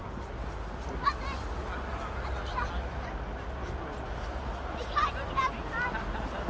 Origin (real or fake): real